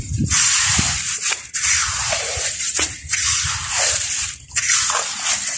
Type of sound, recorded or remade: remade